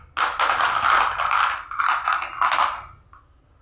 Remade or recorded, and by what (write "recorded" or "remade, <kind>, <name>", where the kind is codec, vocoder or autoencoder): recorded